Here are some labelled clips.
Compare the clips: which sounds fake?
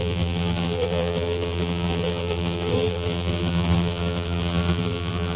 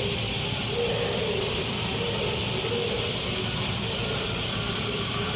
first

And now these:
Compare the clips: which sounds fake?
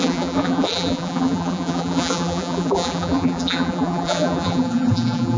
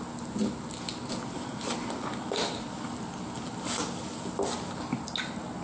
first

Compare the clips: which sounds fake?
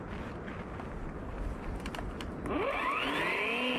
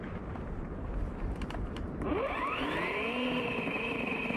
second